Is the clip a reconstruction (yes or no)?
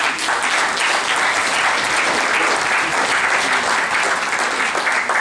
no